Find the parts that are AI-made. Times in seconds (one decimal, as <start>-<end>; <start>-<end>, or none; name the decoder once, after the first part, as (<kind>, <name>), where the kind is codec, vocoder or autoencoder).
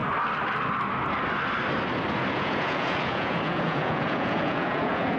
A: 2.3-5.2 (vocoder, Vocos)